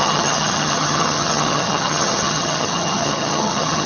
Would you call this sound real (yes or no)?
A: no